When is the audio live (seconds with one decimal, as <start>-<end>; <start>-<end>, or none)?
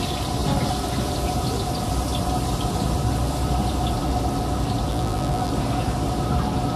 0.0-4.9; 5.5-6.8